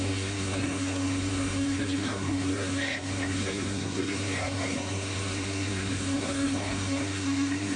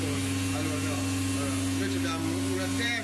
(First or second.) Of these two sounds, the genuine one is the second